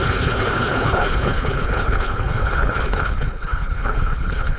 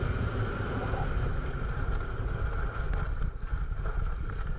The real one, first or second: second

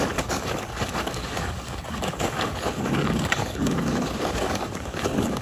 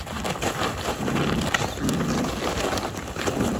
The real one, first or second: second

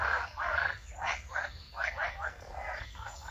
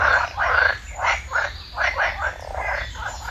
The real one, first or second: second